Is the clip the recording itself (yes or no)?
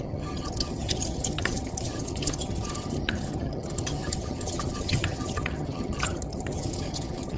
no